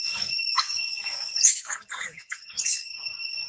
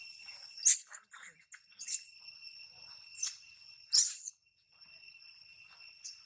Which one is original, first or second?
second